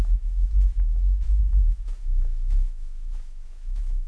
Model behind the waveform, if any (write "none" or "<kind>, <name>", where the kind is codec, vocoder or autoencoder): autoencoder, DAC-VAE